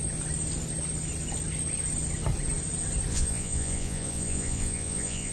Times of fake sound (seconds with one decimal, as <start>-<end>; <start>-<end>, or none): 3.1-5.3